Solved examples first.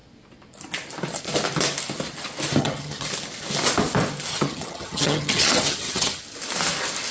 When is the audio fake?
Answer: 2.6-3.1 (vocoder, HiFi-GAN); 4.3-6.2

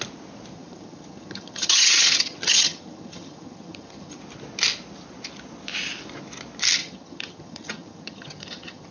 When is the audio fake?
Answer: 0.5-4.2 (vocoder, HiFi-GAN); 6.8-8.9

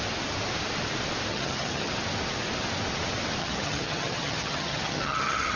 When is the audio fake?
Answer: 1.3-1.9 (vocoder, HiFi-GAN); 3.4-5.6

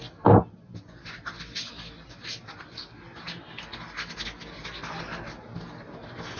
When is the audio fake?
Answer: none

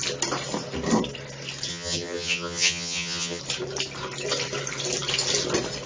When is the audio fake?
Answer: 1.7-3.4 (vocoder, HiFi-GAN)

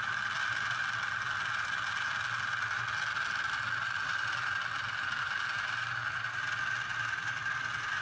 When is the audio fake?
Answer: none